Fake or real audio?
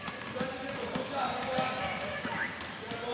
real